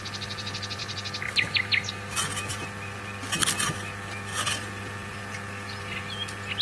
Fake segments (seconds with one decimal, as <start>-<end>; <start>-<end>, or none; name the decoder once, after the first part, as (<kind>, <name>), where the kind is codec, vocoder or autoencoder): 0.0-6.6 (vocoder, BigVGAN v2)